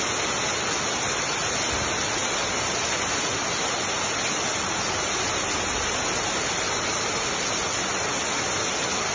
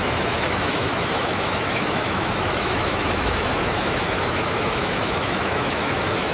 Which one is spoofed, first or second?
second